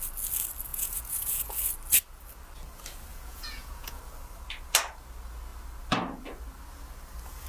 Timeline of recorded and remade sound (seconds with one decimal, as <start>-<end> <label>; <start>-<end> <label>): 0.0-0.7 recorded; 0.7-1.6 remade; 1.6-3.1 recorded; 3.1-4.0 remade; 4.0-7.5 recorded